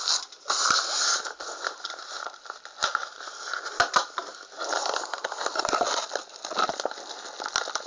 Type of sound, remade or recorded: recorded